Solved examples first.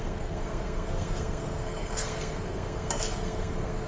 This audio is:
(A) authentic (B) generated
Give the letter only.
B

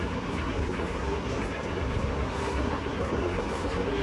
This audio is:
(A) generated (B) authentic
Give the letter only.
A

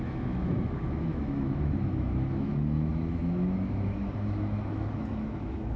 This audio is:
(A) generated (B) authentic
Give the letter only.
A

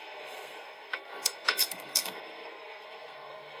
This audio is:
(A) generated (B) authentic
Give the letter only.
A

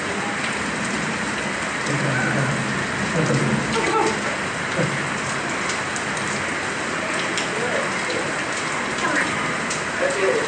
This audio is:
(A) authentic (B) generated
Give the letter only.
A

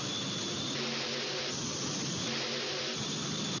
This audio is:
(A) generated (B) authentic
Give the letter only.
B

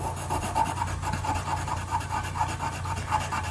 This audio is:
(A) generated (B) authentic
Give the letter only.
B